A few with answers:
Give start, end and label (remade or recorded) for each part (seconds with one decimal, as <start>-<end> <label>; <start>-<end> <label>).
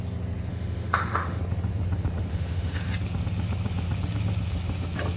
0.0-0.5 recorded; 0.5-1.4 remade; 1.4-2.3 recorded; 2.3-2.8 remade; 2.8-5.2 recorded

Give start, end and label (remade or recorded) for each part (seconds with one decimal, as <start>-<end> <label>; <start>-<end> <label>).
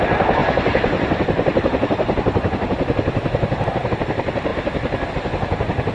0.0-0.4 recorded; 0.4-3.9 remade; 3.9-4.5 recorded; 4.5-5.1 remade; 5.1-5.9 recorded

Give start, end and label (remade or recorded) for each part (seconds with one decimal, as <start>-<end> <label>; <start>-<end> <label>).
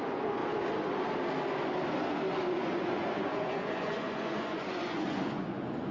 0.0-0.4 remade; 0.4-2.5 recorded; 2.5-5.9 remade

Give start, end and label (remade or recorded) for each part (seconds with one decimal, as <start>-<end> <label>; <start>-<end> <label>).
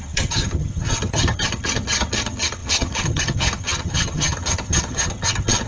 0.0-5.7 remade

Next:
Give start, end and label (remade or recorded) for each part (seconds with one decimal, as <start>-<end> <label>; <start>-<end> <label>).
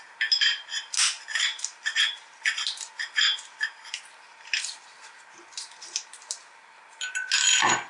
0.0-7.9 recorded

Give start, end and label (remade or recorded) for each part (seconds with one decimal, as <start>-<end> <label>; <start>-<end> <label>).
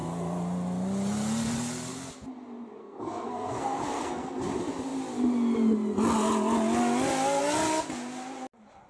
0.0-2.8 recorded; 2.8-4.5 remade; 4.5-8.9 recorded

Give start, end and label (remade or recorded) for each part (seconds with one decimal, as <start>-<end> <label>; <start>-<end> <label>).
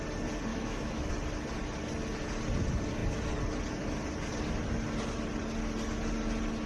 0.0-0.5 recorded; 0.5-1.1 remade; 1.1-6.7 recorded